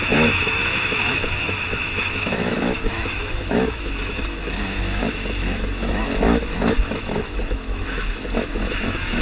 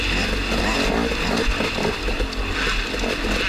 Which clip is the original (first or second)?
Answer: second